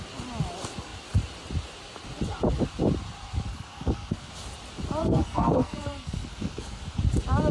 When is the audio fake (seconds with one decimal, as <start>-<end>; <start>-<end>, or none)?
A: 3.5-4.3; 5.0-7.0